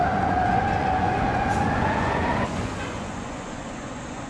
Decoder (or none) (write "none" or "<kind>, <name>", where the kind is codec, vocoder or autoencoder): vocoder, Vocos